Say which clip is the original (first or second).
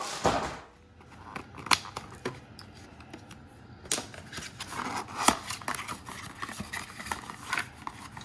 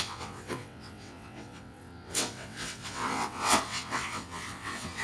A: first